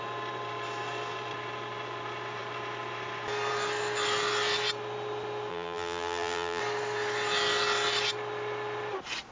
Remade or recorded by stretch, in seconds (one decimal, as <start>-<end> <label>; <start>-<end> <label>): 0.0-5.5 recorded; 5.5-6.6 remade; 6.6-9.3 recorded